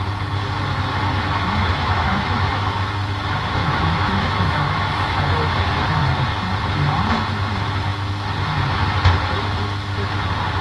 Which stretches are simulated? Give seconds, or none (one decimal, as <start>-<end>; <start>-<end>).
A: 1.6-2.5; 3.6-4.8